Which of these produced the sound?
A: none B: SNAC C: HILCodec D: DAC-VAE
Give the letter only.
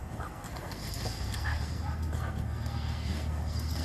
B